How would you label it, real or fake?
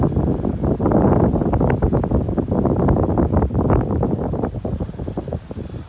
real